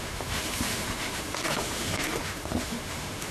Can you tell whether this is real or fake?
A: fake